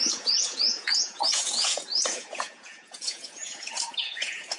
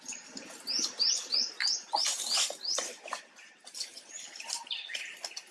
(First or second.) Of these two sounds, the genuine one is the second